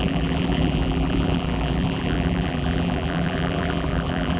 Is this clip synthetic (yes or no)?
yes